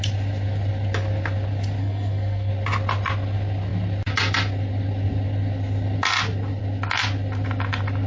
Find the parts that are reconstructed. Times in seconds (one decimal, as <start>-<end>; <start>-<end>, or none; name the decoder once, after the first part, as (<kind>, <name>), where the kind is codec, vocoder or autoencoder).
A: 1.8-2.5 (codec, SNAC)